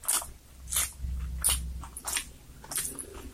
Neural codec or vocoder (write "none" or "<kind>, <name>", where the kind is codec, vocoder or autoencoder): none